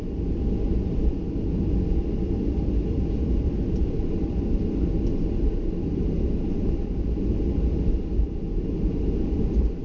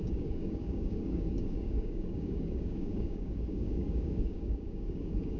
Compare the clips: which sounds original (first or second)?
first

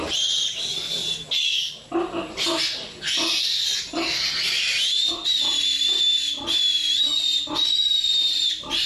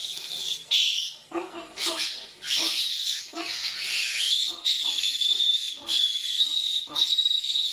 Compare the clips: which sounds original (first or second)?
first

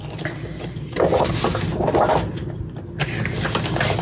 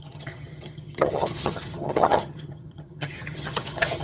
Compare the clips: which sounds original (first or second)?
first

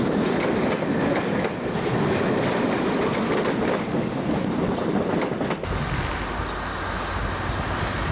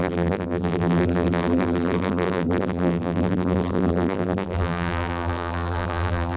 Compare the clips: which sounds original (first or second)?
first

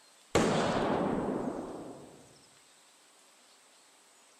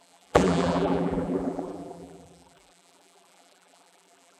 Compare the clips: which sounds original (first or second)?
first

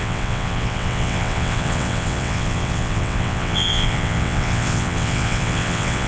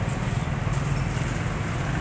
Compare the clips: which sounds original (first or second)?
second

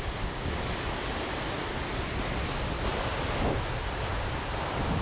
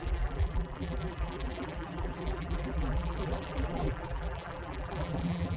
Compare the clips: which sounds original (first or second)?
first